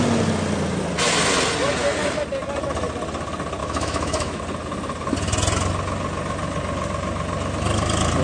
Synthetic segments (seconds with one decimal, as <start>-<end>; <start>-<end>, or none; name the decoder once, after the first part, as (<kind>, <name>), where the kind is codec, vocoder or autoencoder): 3.6-4.4 (autoencoder, DAC-VAE)